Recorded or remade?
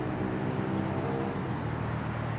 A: recorded